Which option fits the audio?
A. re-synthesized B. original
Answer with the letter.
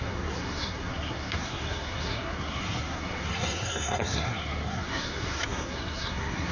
A